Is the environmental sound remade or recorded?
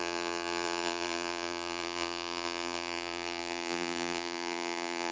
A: remade